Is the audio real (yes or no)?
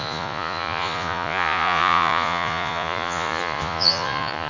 no